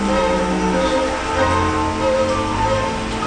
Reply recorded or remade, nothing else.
recorded